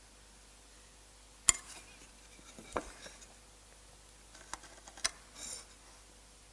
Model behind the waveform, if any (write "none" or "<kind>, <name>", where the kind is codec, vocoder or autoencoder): none